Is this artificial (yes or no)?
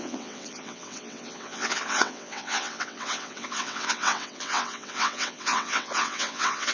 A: yes